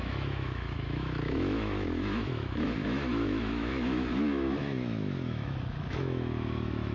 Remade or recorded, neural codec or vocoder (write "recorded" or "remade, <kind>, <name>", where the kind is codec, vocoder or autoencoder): remade, autoencoder, DAC-VAE